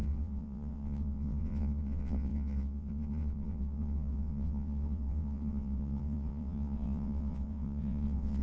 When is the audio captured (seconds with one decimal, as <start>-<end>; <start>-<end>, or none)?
none